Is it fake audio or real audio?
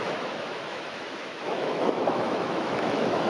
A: fake